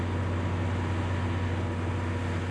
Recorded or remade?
recorded